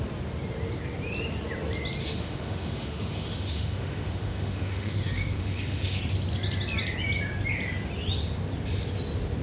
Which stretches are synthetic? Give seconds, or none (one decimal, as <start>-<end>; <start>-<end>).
2.0-6.0

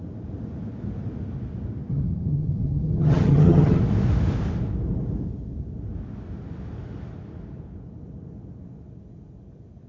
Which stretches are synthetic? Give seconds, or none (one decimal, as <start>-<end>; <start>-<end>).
1.9-3.8